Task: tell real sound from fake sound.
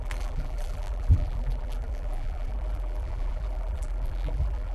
fake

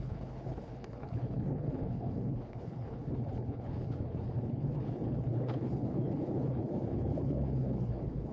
fake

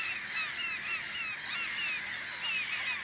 real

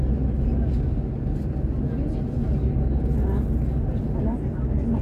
real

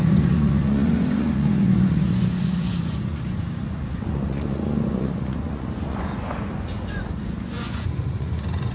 fake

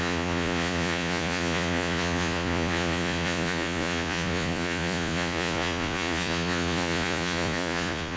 fake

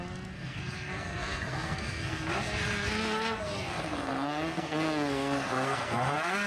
fake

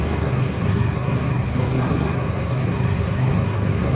fake